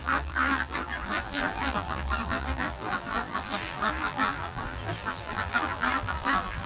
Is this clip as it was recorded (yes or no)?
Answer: no